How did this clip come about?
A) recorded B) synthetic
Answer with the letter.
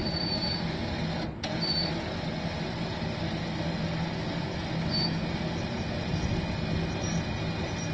A